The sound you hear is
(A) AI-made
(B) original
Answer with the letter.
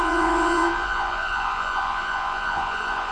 A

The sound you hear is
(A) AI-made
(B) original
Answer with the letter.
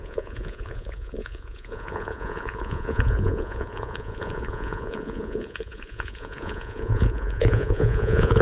A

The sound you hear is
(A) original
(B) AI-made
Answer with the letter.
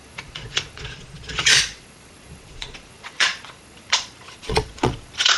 B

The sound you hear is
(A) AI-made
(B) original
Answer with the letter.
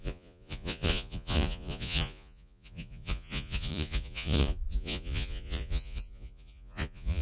A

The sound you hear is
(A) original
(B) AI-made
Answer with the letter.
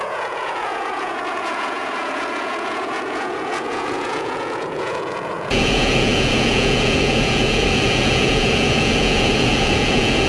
B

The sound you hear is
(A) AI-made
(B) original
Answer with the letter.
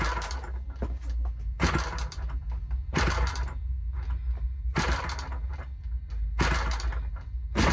B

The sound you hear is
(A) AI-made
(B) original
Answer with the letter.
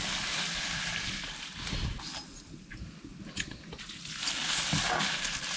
B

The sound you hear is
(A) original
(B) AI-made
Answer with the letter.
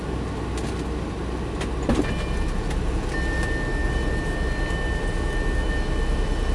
A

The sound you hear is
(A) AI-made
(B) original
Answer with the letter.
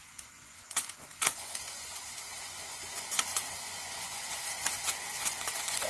A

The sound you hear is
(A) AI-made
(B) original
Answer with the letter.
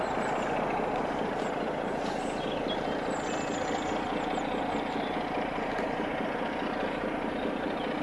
B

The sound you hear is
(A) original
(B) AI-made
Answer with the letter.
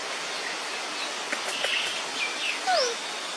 A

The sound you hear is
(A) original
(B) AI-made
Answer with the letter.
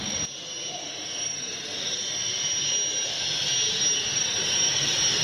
A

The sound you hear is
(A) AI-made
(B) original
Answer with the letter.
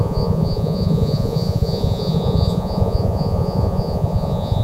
A